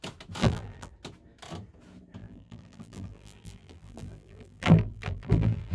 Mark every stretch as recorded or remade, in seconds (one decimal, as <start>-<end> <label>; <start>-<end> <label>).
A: 0.0-0.4 recorded; 0.4-0.9 remade; 0.9-2.2 recorded; 2.2-5.7 remade